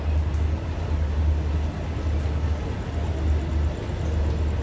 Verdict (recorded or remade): recorded